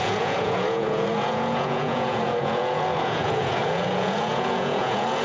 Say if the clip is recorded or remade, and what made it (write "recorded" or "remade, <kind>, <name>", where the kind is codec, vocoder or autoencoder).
remade, vocoder, Vocos